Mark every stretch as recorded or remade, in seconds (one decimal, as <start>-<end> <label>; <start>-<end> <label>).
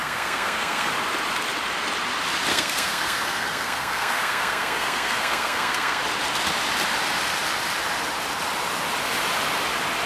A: 0.0-0.9 remade; 0.9-2.5 recorded; 2.5-6.0 remade; 6.0-10.1 recorded